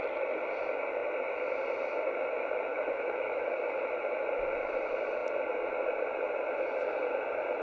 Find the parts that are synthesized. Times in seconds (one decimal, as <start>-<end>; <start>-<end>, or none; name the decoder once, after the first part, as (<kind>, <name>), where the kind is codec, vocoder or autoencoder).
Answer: 2.7-3.8 (autoencoder, DAC-VAE)